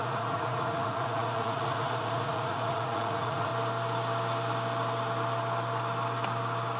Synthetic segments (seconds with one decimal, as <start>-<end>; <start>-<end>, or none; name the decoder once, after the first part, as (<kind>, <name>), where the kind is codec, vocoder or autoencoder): 0.0-3.5 (vocoder, Vocos)